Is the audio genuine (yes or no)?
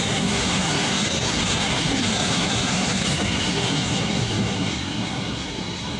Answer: no